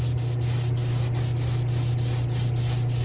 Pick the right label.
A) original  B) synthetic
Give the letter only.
A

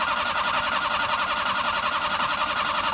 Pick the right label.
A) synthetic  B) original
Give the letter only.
B